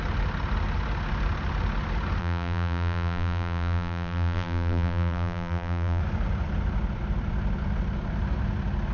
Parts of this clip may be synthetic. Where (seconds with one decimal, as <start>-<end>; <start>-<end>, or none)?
2.2-6.0